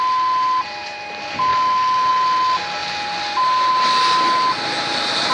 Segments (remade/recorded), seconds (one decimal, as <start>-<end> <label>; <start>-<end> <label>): 0.0-5.3 recorded